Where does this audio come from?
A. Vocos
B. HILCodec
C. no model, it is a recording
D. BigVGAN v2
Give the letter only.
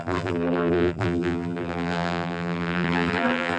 D